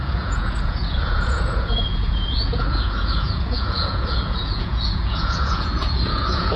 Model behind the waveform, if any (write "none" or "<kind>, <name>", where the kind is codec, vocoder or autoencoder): vocoder, Vocos